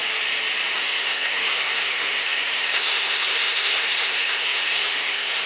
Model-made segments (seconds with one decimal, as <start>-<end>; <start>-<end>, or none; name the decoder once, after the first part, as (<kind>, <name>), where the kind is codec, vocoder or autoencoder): 0.8-5.5 (codec, SNAC)